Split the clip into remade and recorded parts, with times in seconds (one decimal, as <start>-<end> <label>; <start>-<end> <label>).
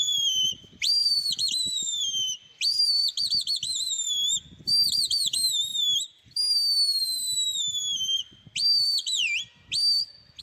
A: 0.0-3.0 remade; 3.0-4.9 recorded; 4.9-5.7 remade; 5.7-10.4 recorded